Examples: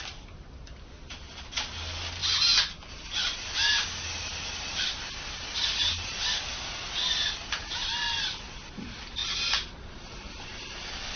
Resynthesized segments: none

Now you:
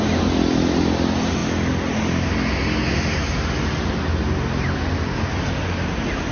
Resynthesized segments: none

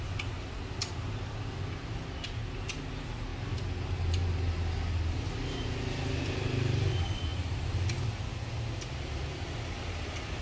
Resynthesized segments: none